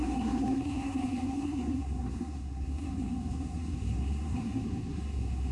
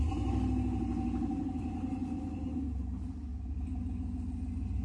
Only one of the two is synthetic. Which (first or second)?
first